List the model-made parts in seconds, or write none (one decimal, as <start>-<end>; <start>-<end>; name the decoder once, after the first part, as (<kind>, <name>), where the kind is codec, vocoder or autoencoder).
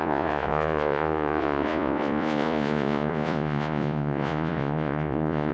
0.0-5.5 (vocoder, Vocos)